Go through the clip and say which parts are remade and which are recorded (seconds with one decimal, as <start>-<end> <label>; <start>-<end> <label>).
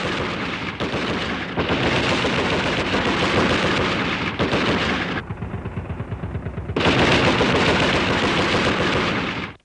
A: 0.0-9.6 recorded